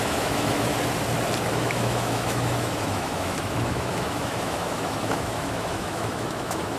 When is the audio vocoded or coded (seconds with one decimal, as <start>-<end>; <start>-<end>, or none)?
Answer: 0.0-0.7; 1.5-6.8